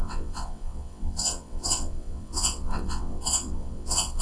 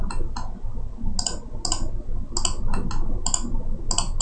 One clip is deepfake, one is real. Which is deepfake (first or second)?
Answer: first